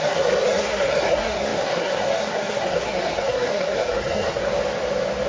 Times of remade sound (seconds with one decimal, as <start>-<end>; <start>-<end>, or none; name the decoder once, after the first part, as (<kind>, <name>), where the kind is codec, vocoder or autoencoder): 0.0-4.5 (codec, SNAC)